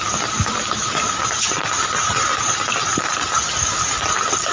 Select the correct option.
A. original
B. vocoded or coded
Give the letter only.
A